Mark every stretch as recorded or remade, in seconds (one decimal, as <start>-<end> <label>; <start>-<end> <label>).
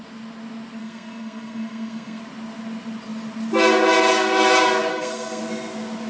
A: 0.0-0.8 recorded; 0.8-2.2 remade; 2.2-4.9 recorded; 4.9-5.4 remade; 5.4-6.1 recorded